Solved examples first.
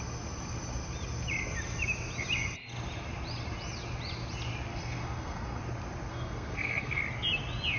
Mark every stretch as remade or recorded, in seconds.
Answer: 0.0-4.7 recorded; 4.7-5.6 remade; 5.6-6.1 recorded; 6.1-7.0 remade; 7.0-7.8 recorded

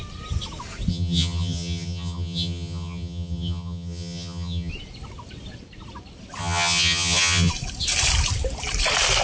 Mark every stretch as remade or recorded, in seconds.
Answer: 0.0-0.9 recorded; 0.9-4.7 remade; 4.7-6.4 recorded; 6.4-7.5 remade; 7.5-9.2 recorded